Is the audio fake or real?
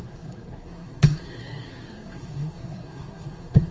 fake